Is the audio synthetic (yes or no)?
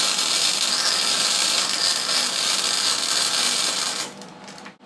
no